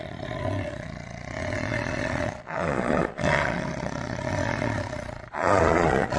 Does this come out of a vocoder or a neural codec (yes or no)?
yes